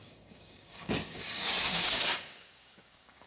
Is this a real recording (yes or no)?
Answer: no